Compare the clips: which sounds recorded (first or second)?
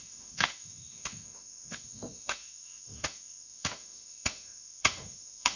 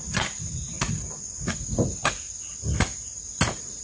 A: second